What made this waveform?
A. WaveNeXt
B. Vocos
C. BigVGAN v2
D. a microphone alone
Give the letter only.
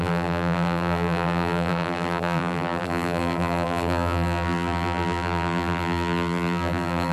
C